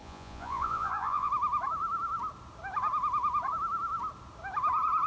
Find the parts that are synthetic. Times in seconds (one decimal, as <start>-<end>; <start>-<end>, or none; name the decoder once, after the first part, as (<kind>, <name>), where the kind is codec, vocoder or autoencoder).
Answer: 0.0-1.3 (vocoder, Vocos)